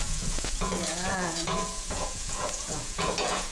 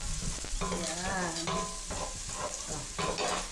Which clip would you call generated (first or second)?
first